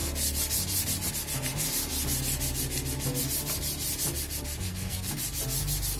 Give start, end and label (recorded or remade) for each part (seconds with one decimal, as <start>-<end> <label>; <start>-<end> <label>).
0.0-4.7 recorded; 4.7-5.2 remade; 5.2-6.0 recorded